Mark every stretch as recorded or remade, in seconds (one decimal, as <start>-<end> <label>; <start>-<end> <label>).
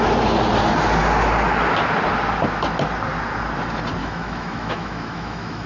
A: 0.0-4.0 recorded; 4.0-5.7 remade